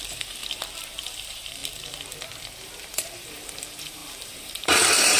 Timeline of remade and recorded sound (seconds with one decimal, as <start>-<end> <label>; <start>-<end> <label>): 0.0-0.4 remade; 0.4-1.1 recorded; 1.1-1.6 remade; 1.6-2.8 recorded; 2.8-5.2 remade